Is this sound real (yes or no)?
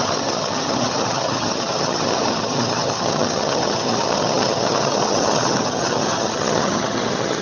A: no